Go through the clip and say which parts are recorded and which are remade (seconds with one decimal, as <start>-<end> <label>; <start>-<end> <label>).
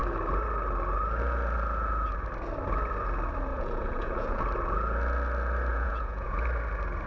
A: 0.0-3.5 recorded; 3.5-4.4 remade; 4.4-5.7 recorded; 5.7-6.4 remade; 6.4-7.1 recorded